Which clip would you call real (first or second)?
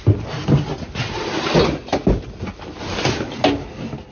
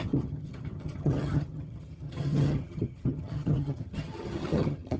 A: first